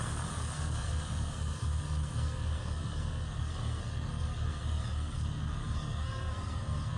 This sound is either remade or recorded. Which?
remade